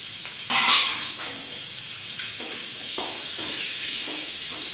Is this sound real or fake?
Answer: fake